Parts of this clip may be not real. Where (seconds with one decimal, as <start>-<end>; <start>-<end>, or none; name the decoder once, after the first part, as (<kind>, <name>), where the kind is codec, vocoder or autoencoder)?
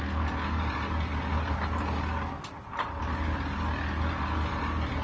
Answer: none